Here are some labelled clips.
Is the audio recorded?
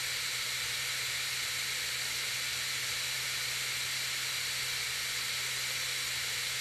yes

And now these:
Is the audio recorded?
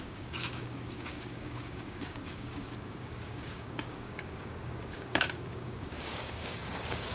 no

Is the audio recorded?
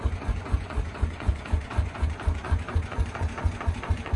no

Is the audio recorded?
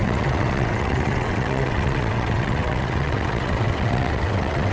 no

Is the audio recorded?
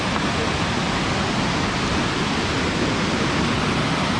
yes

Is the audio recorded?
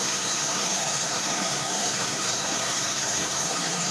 no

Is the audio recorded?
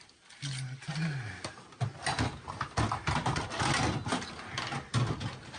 yes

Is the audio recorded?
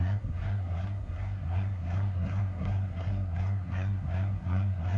no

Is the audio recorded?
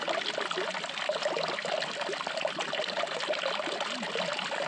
yes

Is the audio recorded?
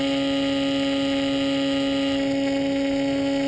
yes